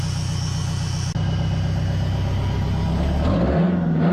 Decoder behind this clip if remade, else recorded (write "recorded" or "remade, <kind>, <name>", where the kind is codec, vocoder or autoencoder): recorded